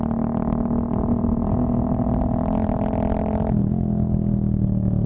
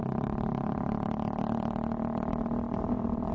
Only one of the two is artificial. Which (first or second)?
second